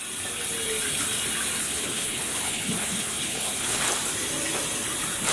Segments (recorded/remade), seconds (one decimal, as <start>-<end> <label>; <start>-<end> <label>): 0.0-1.6 recorded; 1.6-3.8 remade; 3.8-5.3 recorded